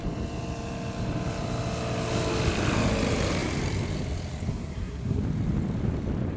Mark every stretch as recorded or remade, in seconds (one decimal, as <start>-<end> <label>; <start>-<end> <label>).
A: 0.0-4.5 recorded; 4.5-5.2 remade; 5.2-6.4 recorded